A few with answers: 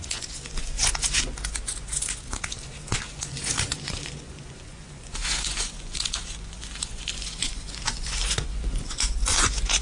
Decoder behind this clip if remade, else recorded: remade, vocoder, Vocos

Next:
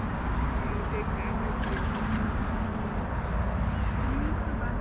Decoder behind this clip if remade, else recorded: recorded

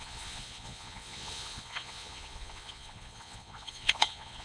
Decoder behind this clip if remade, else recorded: remade, vocoder, Vocos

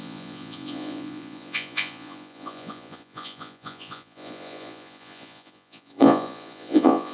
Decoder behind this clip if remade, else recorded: remade, vocoder, Vocos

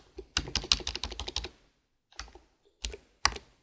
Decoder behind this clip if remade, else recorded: recorded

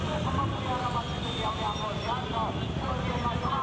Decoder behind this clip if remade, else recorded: recorded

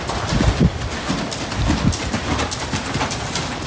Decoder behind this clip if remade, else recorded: recorded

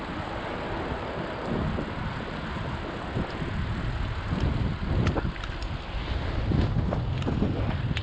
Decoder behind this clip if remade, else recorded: recorded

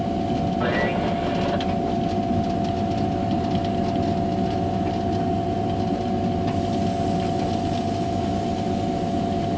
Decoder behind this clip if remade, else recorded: recorded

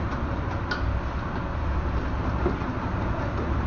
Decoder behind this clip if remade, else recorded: recorded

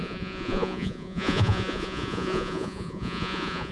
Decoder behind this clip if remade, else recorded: remade, vocoder, Vocos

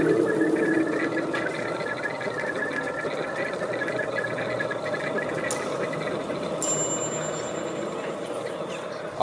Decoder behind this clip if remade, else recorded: recorded